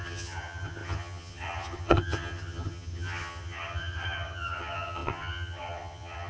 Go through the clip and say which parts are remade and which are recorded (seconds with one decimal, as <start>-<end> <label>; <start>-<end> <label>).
0.0-6.3 remade